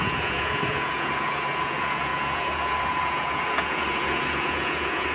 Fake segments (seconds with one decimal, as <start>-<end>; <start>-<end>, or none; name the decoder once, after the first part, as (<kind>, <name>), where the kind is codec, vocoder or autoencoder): 0.0-5.1 (vocoder, Vocos)